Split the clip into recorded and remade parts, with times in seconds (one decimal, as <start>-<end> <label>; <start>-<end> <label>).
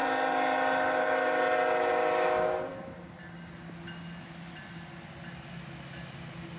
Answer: 0.0-6.6 recorded